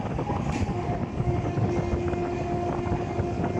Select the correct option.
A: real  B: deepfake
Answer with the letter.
B